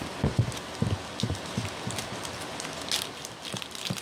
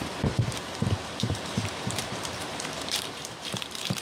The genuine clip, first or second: first